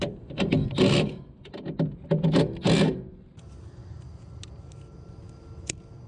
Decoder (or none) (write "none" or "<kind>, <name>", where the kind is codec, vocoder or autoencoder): none